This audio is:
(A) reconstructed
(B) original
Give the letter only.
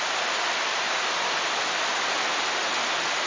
A